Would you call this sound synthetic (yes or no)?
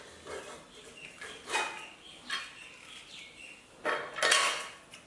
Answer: no